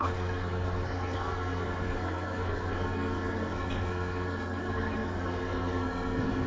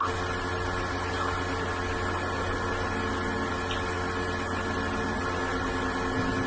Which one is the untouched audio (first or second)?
second